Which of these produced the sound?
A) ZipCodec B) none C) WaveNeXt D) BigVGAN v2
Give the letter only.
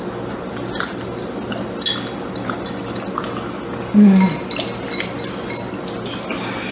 B